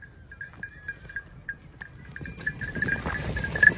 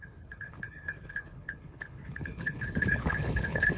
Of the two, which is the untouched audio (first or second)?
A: first